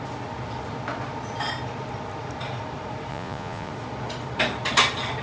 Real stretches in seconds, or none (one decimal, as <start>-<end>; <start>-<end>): 0.0-3.1; 3.7-5.2